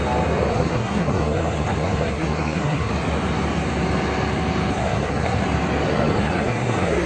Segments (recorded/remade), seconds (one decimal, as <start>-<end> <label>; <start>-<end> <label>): 0.0-0.5 recorded; 0.5-2.9 remade; 2.9-4.7 recorded; 4.7-5.4 remade; 5.4-5.9 recorded; 5.9-7.1 remade